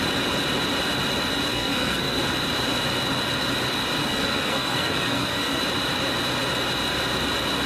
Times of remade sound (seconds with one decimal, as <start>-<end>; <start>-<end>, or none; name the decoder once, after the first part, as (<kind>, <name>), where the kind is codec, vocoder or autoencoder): 1.5-2.2 (codec, SNAC); 4.0-5.6